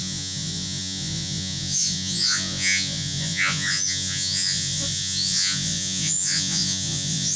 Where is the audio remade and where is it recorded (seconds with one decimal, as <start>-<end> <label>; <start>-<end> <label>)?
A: 0.0-7.4 remade